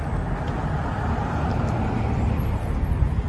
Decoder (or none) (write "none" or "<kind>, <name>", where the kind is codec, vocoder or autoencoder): none